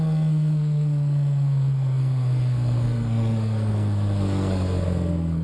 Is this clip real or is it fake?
fake